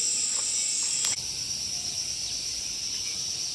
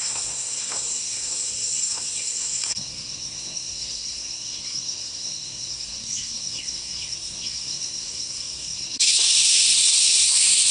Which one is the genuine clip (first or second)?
first